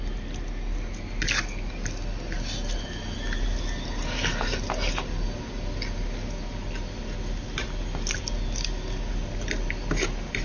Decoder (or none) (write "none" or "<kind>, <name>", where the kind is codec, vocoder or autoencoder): none